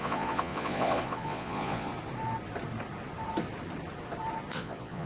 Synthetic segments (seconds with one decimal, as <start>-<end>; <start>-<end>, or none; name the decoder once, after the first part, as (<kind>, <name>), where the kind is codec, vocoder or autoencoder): 0.0-1.9 (vocoder, Vocos); 4.5-5.1